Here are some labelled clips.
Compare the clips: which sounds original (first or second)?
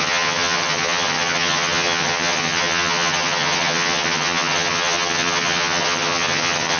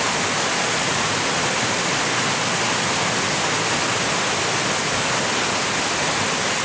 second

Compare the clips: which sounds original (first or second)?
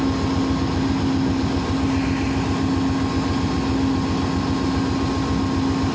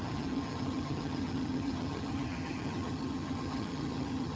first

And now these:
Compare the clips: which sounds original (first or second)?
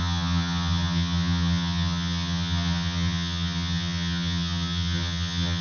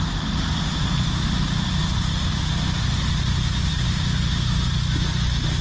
second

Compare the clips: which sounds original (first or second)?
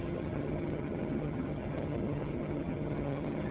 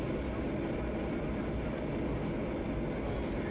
second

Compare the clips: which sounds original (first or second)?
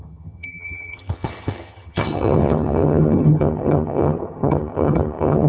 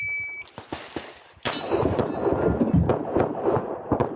second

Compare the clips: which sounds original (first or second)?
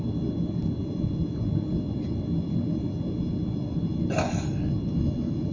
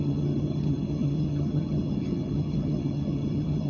first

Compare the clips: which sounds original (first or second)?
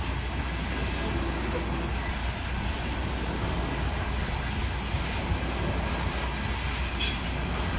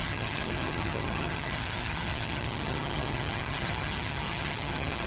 first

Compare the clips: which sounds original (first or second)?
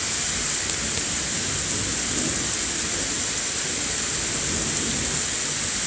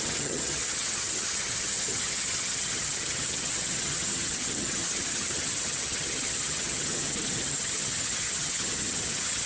first